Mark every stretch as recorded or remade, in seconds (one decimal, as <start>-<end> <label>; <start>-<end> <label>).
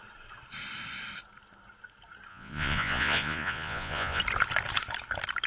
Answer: 0.0-2.3 recorded; 2.3-4.2 remade; 4.2-5.5 recorded